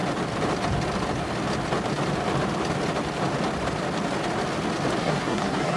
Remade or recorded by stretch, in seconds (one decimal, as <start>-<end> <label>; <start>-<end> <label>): 0.0-5.0 recorded; 5.0-5.8 remade